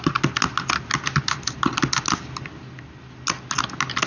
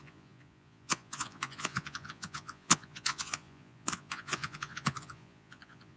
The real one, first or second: first